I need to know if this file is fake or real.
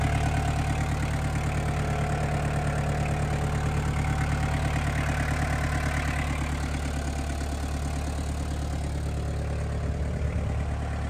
real